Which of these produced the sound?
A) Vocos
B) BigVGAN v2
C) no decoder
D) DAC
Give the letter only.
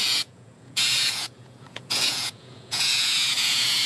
A